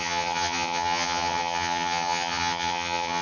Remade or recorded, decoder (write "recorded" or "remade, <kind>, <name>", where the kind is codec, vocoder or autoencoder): remade, vocoder, HiFi-GAN